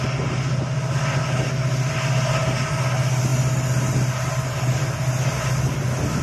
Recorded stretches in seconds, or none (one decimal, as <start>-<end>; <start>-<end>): 0.0-6.2